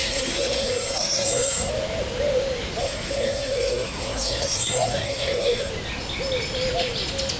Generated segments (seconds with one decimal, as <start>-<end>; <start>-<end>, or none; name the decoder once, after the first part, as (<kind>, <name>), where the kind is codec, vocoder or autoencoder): 0.0-1.7 (codec, SNAC); 2.8-5.7